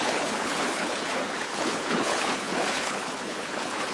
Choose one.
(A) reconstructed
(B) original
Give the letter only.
A